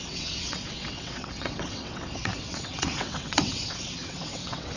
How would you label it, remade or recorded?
remade